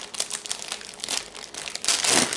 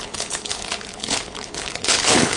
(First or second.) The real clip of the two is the first